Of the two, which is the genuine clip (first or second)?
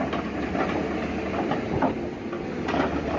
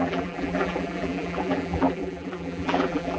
first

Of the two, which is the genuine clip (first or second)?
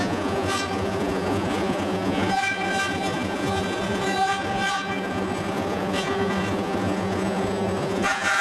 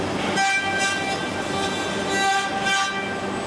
second